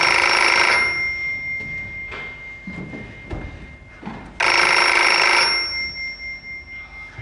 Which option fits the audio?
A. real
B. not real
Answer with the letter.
A